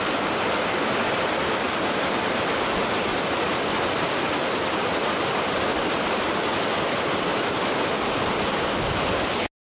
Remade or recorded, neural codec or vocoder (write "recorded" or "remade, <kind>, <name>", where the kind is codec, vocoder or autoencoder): recorded